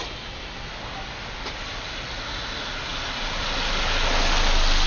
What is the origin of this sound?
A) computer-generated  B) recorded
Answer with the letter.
B